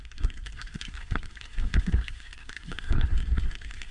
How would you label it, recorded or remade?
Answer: remade